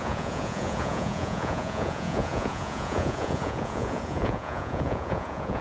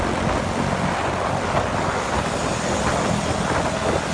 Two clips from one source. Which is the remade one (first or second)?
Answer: first